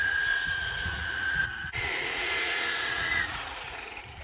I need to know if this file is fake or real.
fake